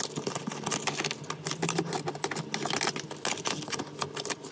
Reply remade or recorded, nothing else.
recorded